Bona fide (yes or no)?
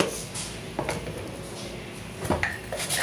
yes